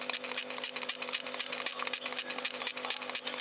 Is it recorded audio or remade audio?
recorded